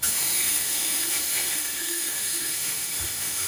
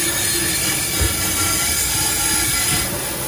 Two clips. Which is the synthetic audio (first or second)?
first